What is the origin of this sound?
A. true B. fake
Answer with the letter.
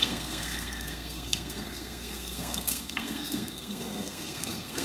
B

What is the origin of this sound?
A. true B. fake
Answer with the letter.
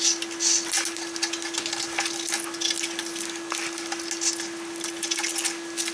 A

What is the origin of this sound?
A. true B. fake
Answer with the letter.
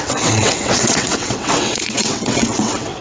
B